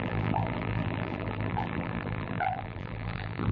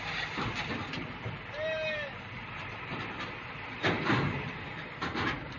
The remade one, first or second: first